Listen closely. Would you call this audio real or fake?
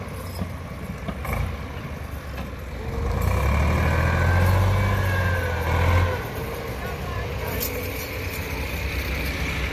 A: real